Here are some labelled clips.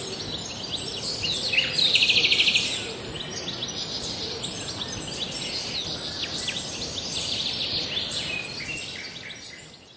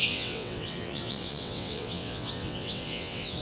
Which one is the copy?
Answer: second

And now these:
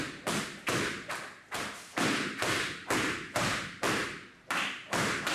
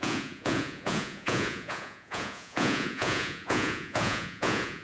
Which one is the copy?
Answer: second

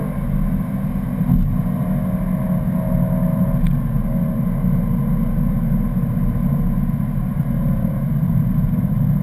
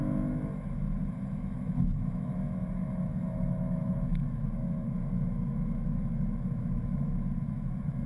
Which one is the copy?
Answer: second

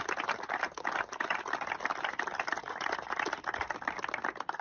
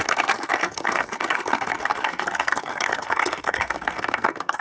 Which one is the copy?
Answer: second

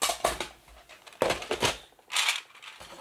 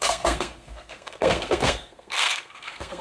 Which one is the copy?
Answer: second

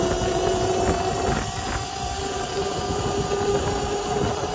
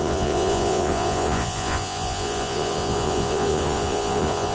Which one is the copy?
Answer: second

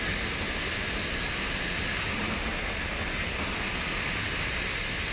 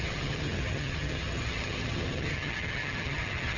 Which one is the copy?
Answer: second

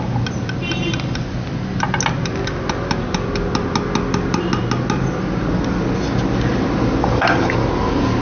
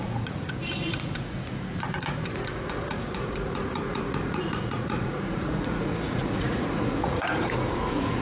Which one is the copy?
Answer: second